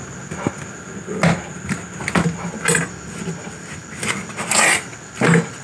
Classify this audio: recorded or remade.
recorded